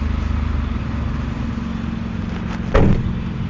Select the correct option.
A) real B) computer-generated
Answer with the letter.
A